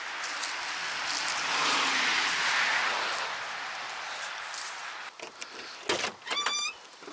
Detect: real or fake real